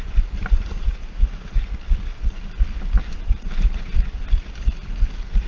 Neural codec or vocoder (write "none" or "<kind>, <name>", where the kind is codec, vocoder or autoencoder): none